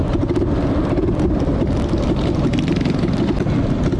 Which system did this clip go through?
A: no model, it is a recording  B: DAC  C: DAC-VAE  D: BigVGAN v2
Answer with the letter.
A